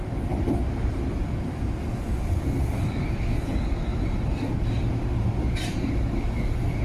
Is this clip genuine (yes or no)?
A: yes